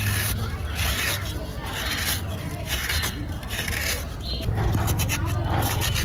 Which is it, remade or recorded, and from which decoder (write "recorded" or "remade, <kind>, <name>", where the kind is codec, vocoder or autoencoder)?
recorded